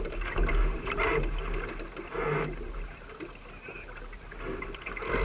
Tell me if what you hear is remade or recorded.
recorded